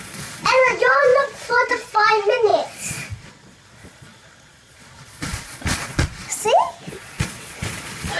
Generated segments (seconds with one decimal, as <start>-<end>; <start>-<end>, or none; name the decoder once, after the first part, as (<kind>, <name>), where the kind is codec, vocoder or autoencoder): 0.0-6.3 (vocoder, Vocos); 6.9-8.2